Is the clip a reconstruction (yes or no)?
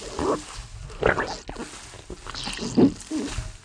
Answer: no